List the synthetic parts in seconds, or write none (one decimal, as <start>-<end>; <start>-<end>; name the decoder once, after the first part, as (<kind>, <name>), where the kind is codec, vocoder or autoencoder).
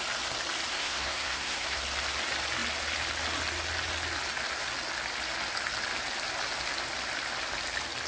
0.7-1.8 (codec, SNAC)